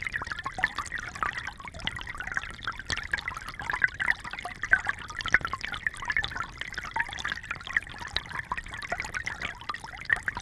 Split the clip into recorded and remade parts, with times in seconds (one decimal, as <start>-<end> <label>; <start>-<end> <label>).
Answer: 0.0-10.4 recorded